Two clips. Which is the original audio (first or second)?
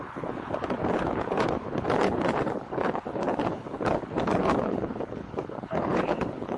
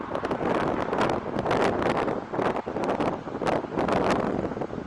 second